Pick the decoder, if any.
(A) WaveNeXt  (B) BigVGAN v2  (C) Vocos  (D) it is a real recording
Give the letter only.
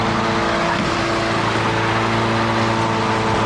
D